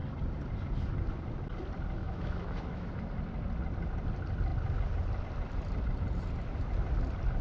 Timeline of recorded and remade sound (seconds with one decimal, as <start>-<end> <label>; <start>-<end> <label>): 0.0-2.0 recorded; 2.0-2.9 remade; 2.9-7.4 recorded